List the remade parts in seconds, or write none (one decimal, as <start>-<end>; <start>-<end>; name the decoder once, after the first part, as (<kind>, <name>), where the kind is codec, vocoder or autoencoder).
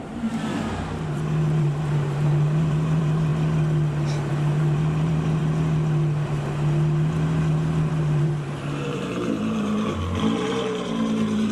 0.0-3.3 (vocoder, BigVGAN v2); 4.3-5.4; 7.9-11.5